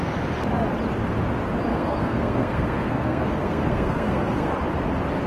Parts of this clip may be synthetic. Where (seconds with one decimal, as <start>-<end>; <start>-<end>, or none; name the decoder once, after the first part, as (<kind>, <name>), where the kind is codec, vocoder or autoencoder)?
1.7-4.5 (codec, SNAC)